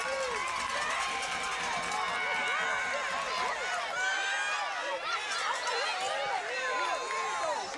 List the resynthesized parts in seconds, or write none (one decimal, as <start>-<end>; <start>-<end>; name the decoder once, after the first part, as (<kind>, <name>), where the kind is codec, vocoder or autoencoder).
0.4-1.8 (vocoder, BigVGAN v2)